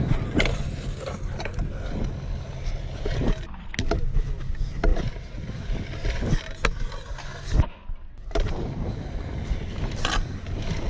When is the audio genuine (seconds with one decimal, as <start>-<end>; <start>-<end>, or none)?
0.0-10.9